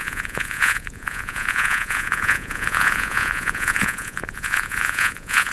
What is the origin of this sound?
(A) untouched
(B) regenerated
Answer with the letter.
B